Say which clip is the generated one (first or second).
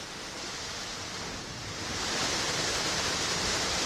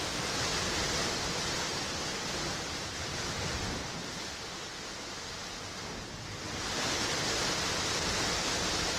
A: first